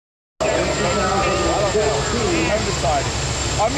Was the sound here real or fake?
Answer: real